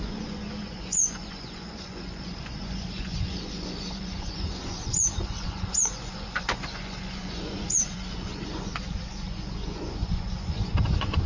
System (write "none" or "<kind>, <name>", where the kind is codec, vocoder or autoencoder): vocoder, Vocos